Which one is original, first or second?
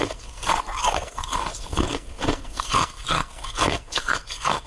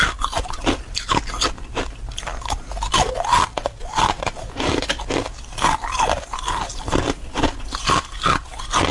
second